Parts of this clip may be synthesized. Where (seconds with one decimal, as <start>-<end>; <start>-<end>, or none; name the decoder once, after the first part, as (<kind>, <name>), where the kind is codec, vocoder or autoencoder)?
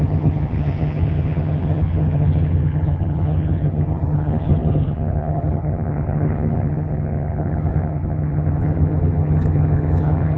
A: 0.0-10.4 (vocoder, HiFi-GAN)